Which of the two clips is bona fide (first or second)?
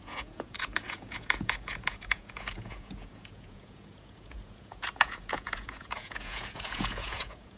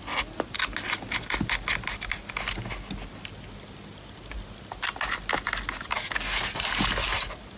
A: second